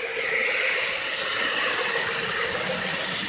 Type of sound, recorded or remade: recorded